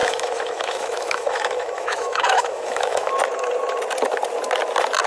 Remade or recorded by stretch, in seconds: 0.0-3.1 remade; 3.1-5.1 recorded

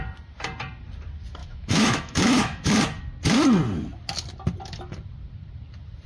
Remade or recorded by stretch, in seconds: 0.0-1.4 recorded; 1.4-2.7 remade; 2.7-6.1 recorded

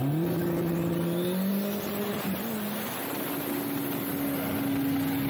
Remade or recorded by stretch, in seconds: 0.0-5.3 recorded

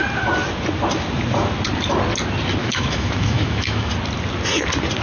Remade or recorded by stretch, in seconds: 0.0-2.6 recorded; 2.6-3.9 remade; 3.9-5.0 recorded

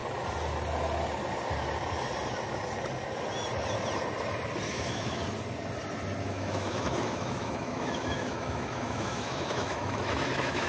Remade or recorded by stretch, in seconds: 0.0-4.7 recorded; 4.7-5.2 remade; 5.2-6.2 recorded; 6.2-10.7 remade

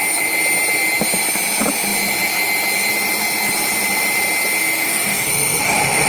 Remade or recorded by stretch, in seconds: 0.0-4.6 recorded; 4.6-6.1 remade

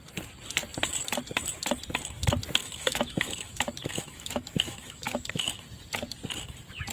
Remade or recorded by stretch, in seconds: 0.0-2.6 recorded; 2.6-5.6 remade; 5.6-6.9 recorded